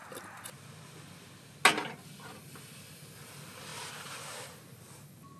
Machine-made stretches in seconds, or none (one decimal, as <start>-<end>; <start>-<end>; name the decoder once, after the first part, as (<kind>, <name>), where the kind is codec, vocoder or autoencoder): none